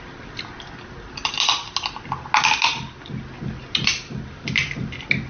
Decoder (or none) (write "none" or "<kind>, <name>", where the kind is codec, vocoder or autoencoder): none